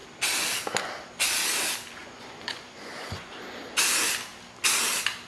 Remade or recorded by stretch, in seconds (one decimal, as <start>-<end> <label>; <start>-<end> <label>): 0.0-2.0 recorded; 2.0-3.3 remade; 3.3-5.3 recorded

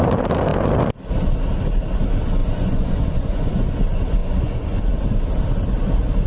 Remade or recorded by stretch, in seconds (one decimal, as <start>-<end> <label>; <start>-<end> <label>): 0.0-2.4 recorded; 2.4-3.5 remade; 3.5-4.2 recorded; 4.2-4.8 remade; 4.8-6.3 recorded

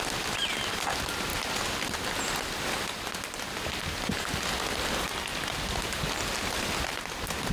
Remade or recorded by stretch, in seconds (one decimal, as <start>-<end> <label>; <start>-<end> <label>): 0.0-7.5 recorded

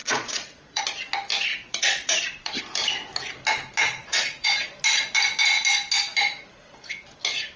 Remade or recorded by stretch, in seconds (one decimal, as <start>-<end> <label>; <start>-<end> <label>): 0.0-0.8 remade; 0.8-1.5 recorded; 1.5-2.6 remade; 2.6-4.0 recorded; 4.0-4.7 remade; 4.7-7.6 recorded